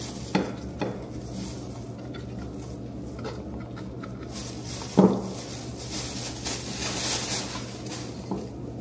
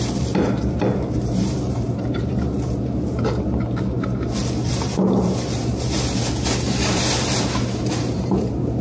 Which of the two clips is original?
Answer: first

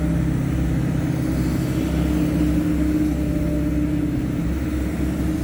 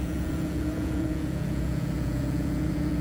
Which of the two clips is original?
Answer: first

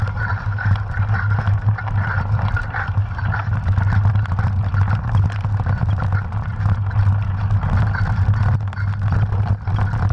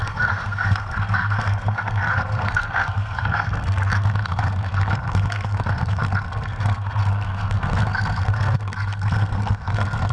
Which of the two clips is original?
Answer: first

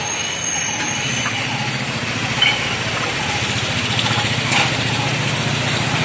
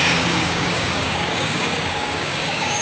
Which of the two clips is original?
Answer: first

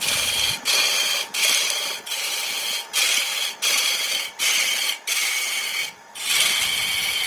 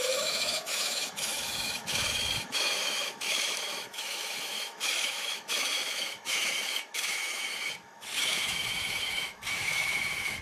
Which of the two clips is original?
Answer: first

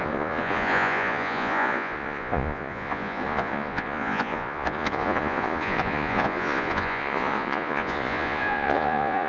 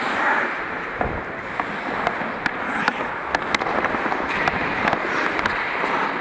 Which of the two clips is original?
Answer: second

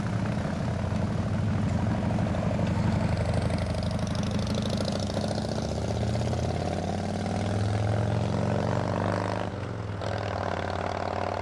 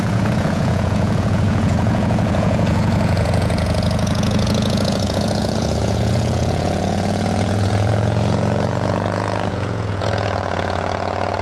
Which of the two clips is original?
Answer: first